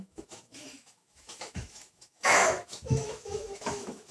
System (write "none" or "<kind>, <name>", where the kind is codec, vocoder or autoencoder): autoencoder, DAC-VAE